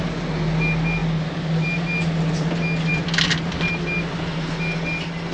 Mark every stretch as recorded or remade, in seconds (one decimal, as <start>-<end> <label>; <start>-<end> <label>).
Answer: 0.0-5.3 recorded